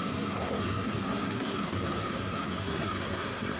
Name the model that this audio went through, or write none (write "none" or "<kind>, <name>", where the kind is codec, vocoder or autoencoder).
codec, SNAC